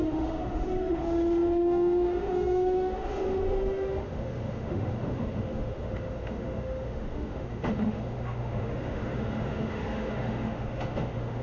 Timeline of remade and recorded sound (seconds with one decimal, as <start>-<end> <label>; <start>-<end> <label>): 0.0-11.4 remade